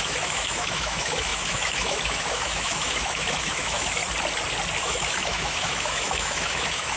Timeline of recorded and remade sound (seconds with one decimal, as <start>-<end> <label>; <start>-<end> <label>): 0.0-4.0 remade; 4.0-4.8 recorded; 4.8-7.0 remade